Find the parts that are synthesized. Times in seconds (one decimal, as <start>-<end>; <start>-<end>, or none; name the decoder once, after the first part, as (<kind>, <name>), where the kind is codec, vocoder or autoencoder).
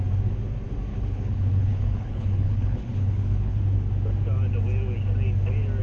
0.9-3.6 (codec, HILCodec)